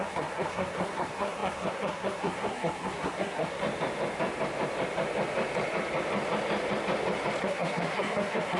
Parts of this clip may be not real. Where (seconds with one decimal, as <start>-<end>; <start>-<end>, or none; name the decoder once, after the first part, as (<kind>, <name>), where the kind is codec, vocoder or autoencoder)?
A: 0.0-3.6 (codec, SNAC); 7.4-8.6